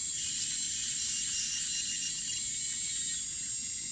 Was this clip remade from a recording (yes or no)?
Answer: no